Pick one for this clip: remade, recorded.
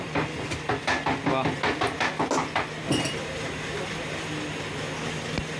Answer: recorded